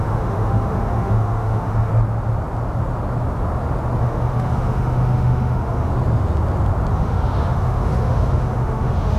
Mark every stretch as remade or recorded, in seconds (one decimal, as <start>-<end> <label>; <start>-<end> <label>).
0.0-1.9 remade; 1.9-4.0 recorded; 4.0-5.9 remade; 5.9-6.9 recorded; 6.9-9.2 remade